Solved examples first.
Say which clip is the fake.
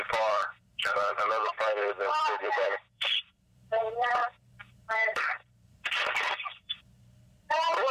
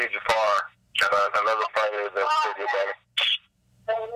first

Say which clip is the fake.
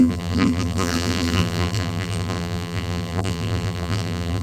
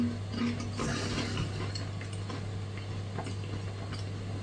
first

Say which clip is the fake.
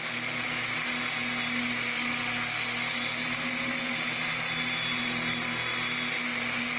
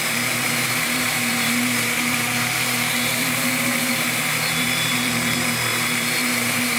second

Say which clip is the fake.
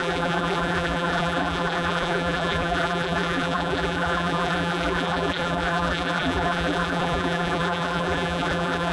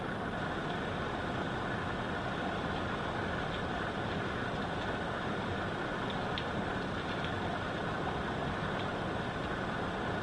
first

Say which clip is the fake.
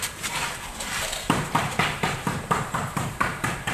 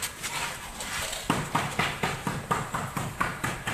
first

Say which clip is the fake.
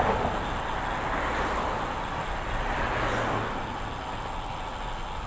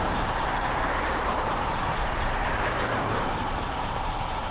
second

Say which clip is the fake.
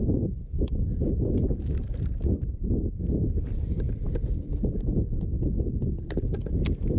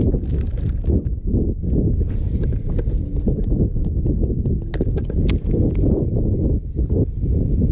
first